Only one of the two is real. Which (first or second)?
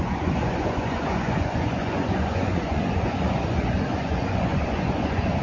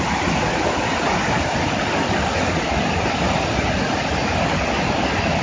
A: second